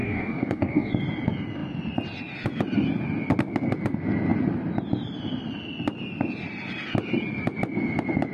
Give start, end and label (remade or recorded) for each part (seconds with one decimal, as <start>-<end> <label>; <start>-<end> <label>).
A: 0.0-0.9 remade; 0.9-8.3 recorded